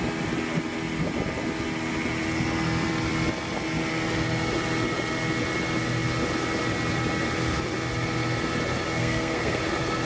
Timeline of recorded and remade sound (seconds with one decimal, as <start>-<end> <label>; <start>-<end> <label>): 0.0-9.0 recorded; 9.0-9.6 remade; 9.6-10.1 recorded

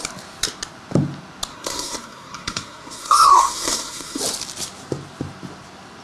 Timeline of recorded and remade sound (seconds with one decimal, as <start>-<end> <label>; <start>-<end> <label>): 0.0-1.5 recorded; 1.5-4.2 remade; 4.2-6.0 recorded

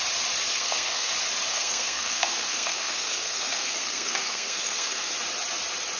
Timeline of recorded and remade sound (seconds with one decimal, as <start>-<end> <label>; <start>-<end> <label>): 0.0-0.5 recorded; 0.5-1.1 remade; 1.1-1.5 recorded; 1.5-5.1 remade; 5.1-6.0 recorded

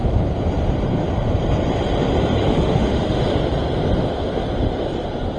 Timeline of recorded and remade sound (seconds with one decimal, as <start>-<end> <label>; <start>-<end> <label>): 0.0-2.4 recorded; 2.4-3.2 remade; 3.2-5.4 recorded